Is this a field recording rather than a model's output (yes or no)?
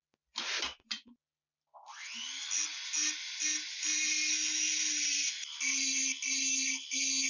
yes